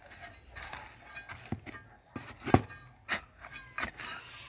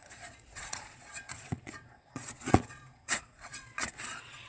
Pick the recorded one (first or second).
first